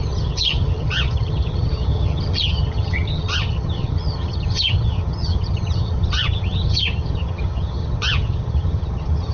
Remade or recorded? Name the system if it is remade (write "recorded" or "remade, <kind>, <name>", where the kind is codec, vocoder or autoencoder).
remade, vocoder, HiFi-GAN